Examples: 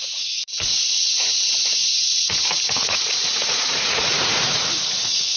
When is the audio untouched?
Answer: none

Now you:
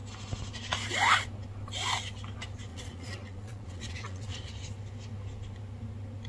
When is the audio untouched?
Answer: 0.0-2.7; 4.5-6.3

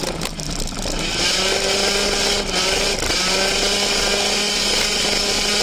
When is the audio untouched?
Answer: 0.0-5.6

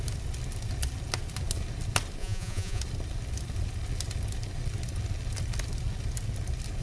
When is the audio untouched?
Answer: 0.0-2.2; 2.8-6.8

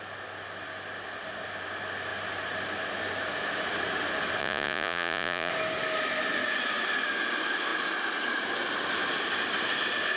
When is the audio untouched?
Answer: 0.0-4.4; 5.5-10.2

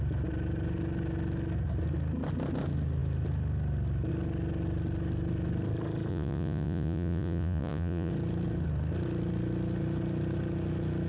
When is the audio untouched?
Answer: 0.0-6.1; 8.1-11.1

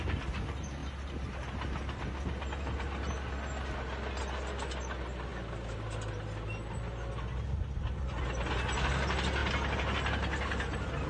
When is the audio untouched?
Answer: 0.0-11.1